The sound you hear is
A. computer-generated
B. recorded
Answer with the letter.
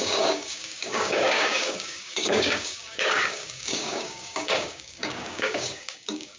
A